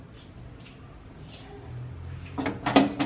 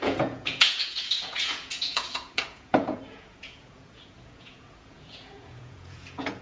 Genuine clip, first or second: first